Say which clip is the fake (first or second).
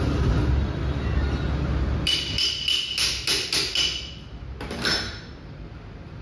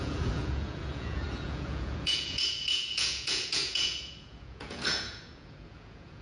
second